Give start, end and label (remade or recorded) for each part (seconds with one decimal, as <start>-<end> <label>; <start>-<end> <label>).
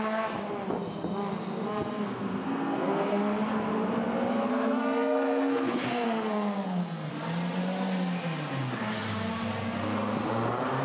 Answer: 0.0-1.4 recorded; 1.4-3.4 remade; 3.4-4.5 recorded; 4.5-7.1 remade; 7.1-10.8 recorded